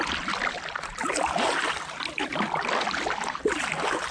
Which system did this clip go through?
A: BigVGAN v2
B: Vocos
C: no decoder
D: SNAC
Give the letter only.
C